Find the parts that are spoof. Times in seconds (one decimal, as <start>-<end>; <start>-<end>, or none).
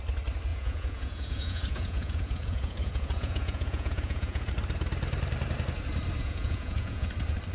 0.5-4.5; 6.2-7.1